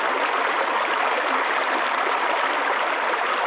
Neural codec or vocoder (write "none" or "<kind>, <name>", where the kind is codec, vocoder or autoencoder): none